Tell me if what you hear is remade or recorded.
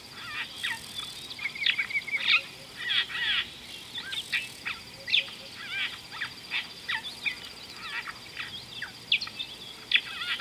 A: recorded